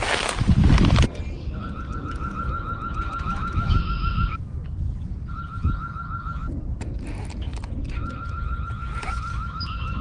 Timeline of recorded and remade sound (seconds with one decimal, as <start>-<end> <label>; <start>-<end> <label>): 0.0-3.3 recorded; 3.3-4.7 remade; 4.7-9.3 recorded; 9.3-10.0 remade